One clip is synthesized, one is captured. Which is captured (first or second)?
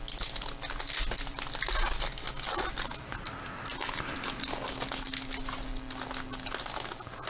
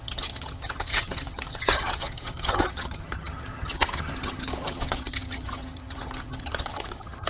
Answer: first